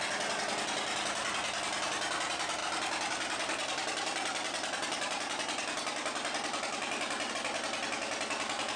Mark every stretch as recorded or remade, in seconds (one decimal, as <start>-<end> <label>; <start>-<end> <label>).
0.0-8.8 recorded